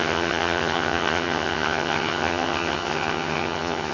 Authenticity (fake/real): fake